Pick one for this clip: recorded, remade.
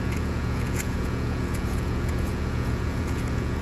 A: remade